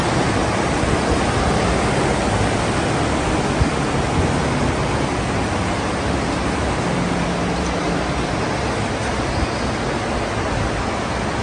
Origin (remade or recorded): recorded